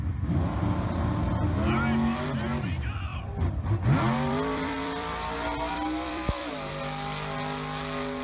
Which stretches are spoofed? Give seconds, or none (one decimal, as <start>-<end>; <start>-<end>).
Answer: 3.1-6.7